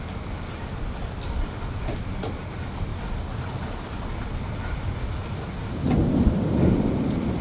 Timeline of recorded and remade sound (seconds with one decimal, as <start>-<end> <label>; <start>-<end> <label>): 0.0-7.4 recorded

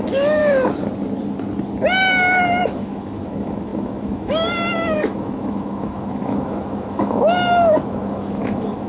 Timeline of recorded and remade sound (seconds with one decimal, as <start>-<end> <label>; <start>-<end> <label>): 0.0-0.4 remade; 0.4-2.6 recorded; 2.6-8.9 remade

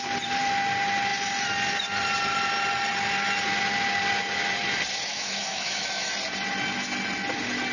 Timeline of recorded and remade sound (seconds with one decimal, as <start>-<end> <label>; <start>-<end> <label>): 0.0-5.1 recorded; 5.1-6.1 remade; 6.1-7.7 recorded

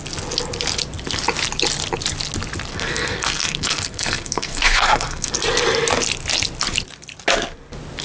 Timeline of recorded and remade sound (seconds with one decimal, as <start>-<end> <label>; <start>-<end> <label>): 0.0-2.7 recorded; 2.7-5.3 remade; 5.3-8.0 recorded

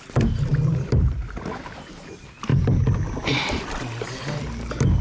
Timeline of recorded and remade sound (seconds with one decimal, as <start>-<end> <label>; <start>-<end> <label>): 0.0-5.0 recorded

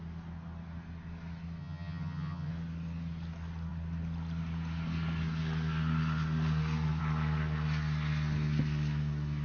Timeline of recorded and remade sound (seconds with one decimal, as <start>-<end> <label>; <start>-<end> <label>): 0.0-1.6 recorded; 1.6-2.5 remade; 2.5-9.4 recorded

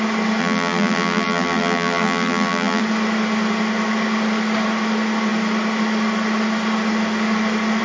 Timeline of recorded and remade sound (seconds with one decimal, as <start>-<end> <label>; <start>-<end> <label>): 0.0-0.4 recorded; 0.4-2.8 remade; 2.8-7.8 recorded

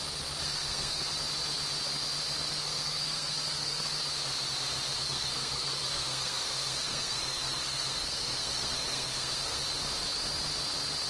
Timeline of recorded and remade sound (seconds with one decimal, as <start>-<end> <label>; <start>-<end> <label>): 0.0-0.4 recorded; 0.4-1.1 remade; 1.1-2.4 recorded; 2.4-4.0 remade; 4.0-5.0 recorded; 5.0-9.6 remade; 9.6-11.1 recorded